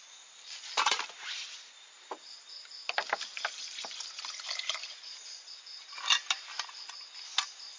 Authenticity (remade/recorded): recorded